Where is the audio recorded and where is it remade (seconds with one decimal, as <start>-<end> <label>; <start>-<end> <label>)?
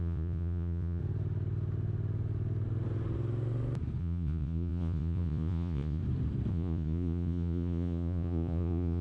0.0-1.0 remade; 1.0-4.0 recorded; 4.0-6.0 remade; 6.0-6.5 recorded; 6.5-9.0 remade